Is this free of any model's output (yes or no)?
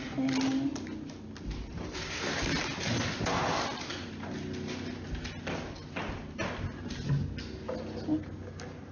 yes